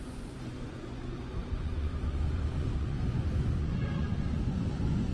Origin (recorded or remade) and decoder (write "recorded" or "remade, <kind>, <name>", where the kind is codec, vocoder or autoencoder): remade, vocoder, Vocos